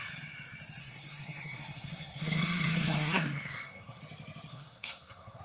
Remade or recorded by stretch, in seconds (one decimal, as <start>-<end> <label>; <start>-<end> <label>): 0.0-0.8 recorded; 0.8-4.0 remade; 4.0-4.5 recorded; 4.5-5.4 remade